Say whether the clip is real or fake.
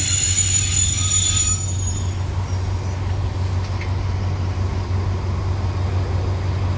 real